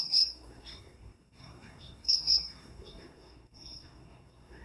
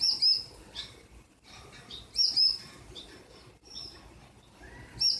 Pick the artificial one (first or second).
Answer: first